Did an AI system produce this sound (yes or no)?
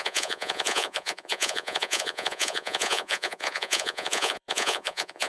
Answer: yes